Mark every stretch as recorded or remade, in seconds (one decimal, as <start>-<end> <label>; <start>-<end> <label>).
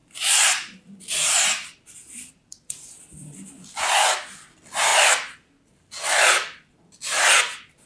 0.0-3.5 remade; 3.5-7.9 recorded